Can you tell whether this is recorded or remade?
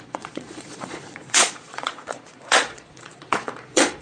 remade